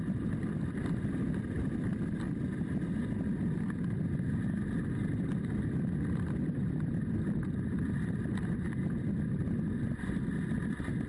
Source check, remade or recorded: recorded